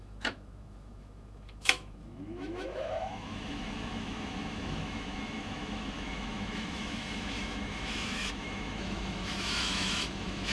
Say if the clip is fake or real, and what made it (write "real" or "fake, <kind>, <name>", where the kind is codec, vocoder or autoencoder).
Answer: fake, autoencoder, DAC-VAE